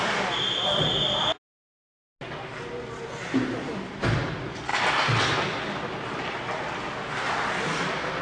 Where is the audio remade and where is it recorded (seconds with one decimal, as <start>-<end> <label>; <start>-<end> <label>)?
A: 0.0-8.2 recorded